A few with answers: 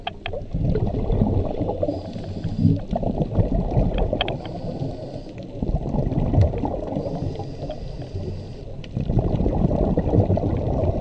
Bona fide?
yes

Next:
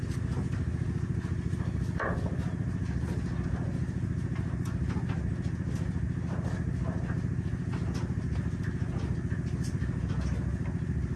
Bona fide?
yes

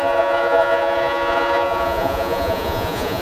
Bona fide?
no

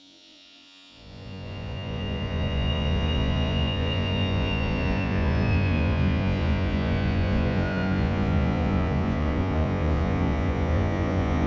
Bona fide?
no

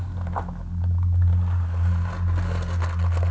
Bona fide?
yes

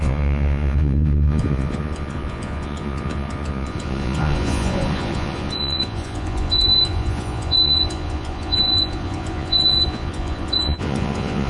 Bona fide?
no